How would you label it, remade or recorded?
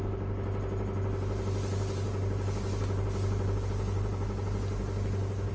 recorded